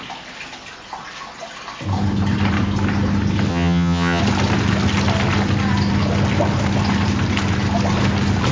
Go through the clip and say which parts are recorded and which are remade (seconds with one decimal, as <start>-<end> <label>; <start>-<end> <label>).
0.0-3.5 recorded; 3.5-4.2 remade; 4.2-8.5 recorded